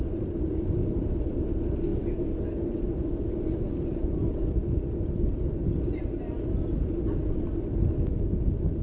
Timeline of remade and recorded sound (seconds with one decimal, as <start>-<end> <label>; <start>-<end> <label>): 0.0-8.8 recorded